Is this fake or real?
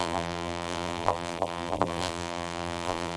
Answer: fake